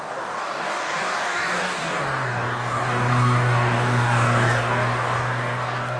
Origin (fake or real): fake